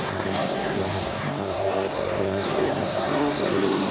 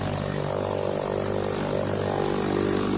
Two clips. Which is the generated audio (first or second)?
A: first